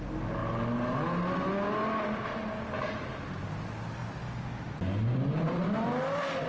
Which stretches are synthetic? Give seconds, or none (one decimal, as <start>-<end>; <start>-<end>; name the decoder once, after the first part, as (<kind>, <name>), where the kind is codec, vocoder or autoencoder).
none